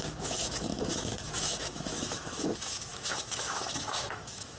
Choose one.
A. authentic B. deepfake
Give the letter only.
B